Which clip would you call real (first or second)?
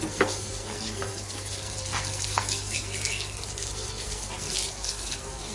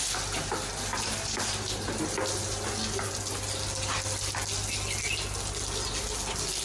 second